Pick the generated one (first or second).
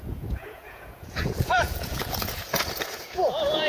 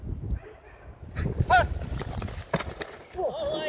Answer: first